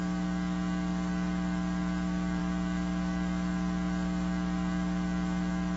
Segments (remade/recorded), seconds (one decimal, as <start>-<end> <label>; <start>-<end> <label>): 0.0-5.8 remade